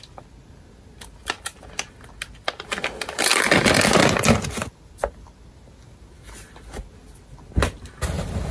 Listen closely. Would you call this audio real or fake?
real